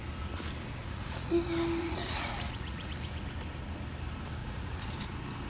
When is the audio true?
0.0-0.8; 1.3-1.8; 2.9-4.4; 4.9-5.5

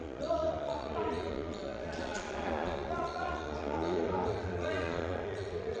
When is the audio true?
none

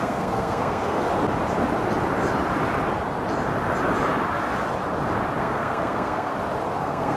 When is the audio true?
1.1-5.4; 6.3-6.8